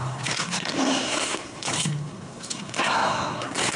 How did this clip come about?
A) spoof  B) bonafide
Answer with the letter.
A